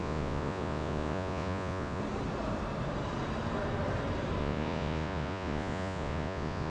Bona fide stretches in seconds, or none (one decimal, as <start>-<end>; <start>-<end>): 2.0-4.4